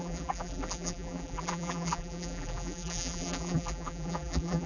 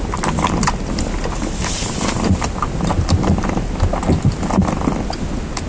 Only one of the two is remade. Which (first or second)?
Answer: first